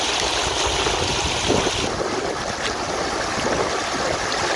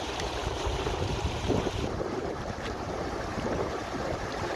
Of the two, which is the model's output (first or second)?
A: second